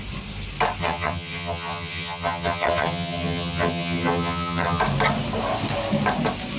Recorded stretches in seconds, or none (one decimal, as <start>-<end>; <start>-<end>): 0.0-0.8; 4.8-6.6